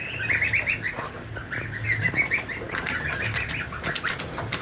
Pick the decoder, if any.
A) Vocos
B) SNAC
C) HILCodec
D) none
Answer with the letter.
D